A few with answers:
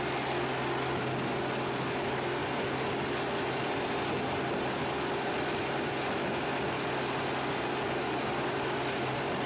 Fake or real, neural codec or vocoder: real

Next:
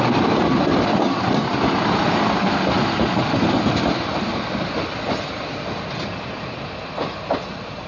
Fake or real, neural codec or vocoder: real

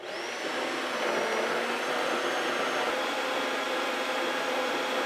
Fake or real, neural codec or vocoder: real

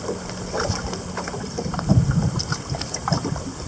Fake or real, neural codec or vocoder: real